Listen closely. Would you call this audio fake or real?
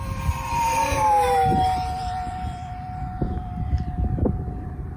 fake